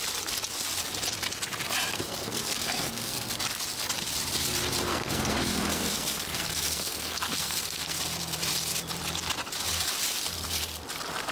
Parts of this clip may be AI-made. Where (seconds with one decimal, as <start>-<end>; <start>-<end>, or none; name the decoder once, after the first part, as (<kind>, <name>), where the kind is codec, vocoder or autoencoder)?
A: 1.9-3.3 (codec, SNAC); 4.9-8.0